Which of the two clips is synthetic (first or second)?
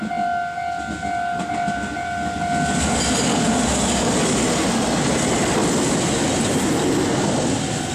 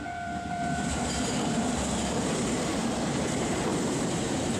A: second